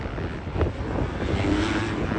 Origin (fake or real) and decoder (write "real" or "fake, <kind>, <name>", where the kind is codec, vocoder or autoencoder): real